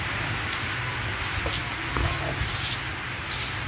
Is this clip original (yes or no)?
yes